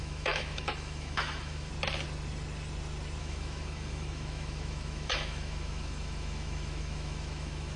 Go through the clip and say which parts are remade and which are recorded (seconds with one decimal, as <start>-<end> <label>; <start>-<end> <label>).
0.0-1.7 remade; 1.7-3.2 recorded; 3.2-7.8 remade